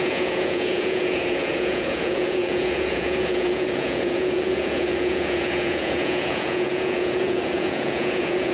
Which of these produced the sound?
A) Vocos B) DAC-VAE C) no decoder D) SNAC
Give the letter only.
A